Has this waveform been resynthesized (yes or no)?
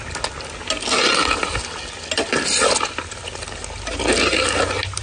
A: no